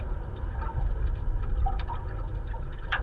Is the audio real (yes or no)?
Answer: no